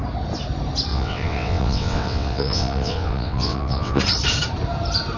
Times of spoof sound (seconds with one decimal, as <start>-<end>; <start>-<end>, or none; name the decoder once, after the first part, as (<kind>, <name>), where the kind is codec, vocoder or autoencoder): 0.9-4.0 (vocoder, WaveNeXt)